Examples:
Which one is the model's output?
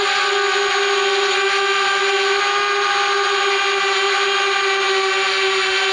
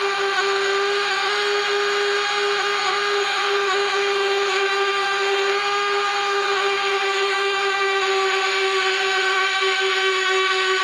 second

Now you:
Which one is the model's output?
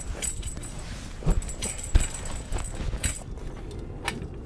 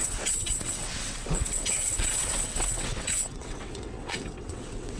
second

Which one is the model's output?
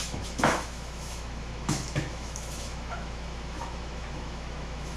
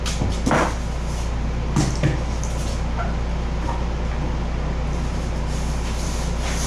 first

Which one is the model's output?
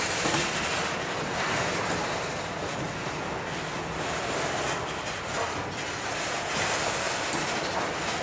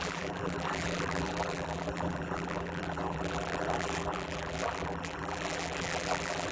second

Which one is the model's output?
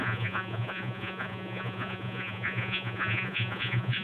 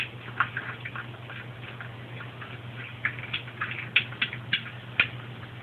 first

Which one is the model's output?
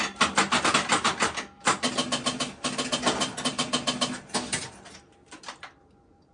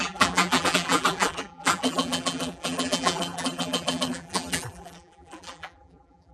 second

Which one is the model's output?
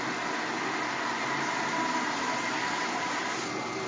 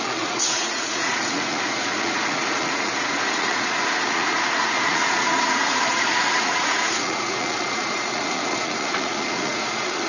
second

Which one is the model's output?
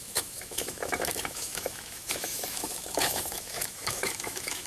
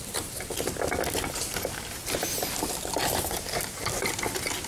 first